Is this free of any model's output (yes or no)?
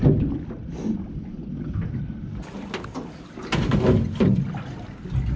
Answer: yes